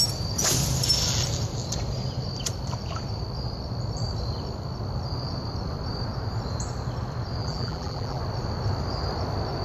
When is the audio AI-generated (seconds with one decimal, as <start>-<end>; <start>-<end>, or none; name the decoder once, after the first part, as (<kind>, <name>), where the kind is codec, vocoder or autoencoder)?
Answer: 7.4-8.2 (vocoder, BigVGAN v2)